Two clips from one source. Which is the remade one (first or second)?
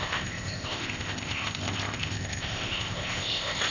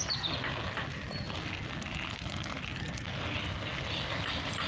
first